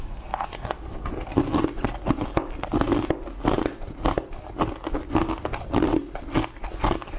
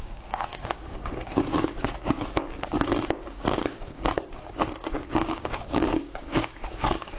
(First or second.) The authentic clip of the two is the first